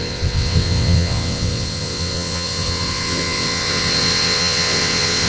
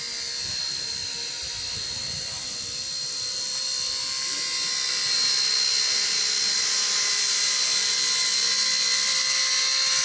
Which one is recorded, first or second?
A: second